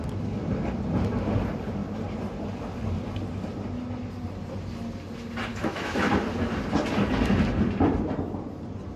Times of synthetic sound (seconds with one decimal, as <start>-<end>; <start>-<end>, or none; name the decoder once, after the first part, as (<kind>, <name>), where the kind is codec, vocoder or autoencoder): 5.5-6.1 (autoencoder, DAC-VAE)